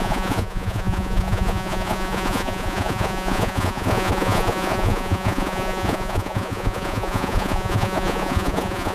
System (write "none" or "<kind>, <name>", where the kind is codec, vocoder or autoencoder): vocoder, Vocos